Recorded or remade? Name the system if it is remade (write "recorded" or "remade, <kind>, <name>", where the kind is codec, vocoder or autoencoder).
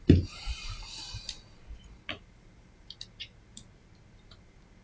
recorded